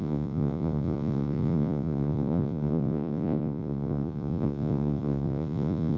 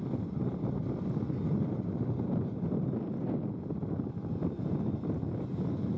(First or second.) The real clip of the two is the second